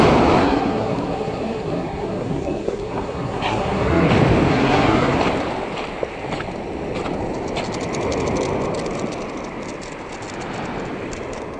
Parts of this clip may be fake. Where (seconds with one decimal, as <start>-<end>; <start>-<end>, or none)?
0.4-4.1; 4.5-5.2